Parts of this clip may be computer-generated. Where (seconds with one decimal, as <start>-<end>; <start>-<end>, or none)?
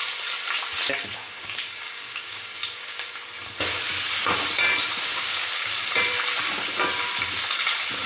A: 1.2-3.1; 5.1-5.7